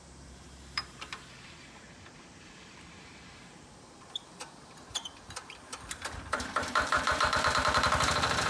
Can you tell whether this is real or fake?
fake